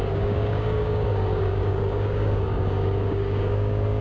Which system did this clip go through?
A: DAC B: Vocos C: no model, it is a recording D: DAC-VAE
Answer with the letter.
A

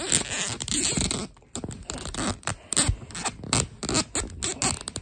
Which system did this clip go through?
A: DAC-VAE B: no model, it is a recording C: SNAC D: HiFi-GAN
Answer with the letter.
B